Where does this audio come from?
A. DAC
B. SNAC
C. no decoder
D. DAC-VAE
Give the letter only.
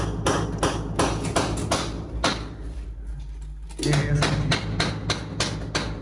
C